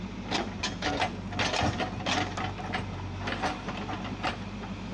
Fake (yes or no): no